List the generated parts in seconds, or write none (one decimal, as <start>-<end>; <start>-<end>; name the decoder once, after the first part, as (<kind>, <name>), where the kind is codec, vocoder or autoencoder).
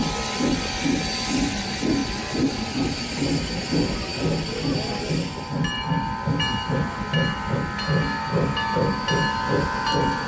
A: none